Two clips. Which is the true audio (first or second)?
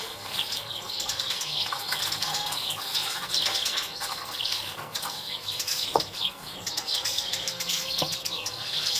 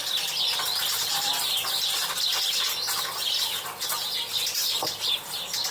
second